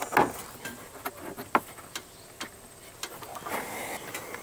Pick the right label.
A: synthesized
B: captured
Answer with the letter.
B